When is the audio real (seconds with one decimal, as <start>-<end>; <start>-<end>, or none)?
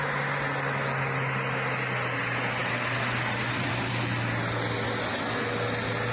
0.0-2.6; 3.9-6.1